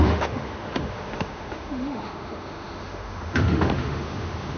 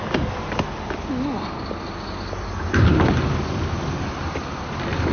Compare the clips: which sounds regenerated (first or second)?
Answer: first